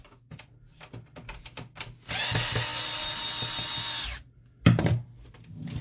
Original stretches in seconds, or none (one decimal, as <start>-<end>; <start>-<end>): 0.0-5.8